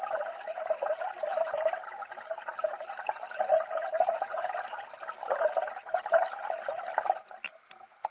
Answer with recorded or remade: recorded